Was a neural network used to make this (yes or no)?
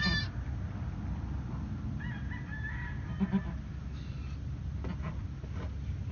no